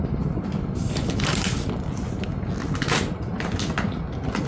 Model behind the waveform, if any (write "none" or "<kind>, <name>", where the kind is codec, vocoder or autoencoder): none